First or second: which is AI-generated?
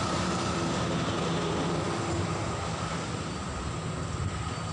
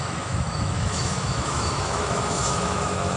second